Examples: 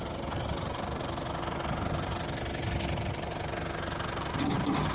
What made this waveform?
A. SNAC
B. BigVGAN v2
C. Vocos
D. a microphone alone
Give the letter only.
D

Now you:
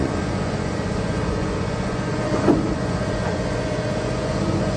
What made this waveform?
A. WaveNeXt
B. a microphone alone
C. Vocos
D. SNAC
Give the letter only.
C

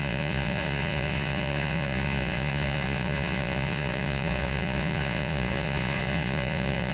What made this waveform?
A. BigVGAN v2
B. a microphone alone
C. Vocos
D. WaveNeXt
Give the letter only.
C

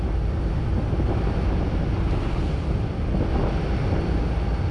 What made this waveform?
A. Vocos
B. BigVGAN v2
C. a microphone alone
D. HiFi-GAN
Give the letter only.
C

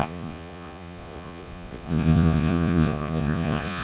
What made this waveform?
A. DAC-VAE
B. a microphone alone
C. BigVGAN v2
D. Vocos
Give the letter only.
D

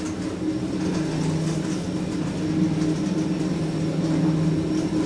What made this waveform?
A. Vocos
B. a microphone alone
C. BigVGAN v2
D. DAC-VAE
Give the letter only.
B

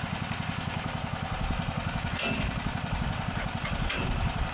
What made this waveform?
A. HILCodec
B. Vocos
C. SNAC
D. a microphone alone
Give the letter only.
D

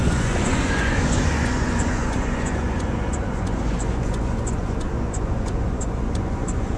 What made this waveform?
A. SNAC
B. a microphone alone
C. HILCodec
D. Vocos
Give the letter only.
D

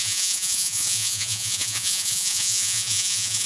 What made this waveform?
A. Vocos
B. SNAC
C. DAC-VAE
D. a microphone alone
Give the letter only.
A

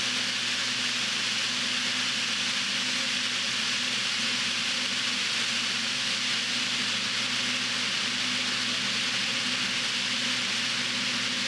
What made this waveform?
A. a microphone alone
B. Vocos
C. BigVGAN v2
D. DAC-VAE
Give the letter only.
A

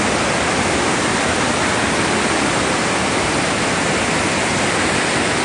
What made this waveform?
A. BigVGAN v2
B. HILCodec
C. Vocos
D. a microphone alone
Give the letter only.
D